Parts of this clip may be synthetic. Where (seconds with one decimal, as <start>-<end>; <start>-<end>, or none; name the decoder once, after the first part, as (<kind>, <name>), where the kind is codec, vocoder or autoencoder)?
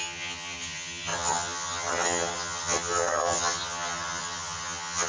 0.0-5.1 (vocoder, HiFi-GAN)